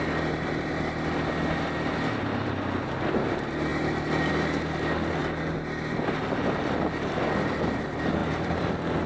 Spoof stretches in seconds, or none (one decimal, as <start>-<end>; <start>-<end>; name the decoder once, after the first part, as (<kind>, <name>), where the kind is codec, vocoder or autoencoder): 8.2-8.7 (vocoder, BigVGAN v2)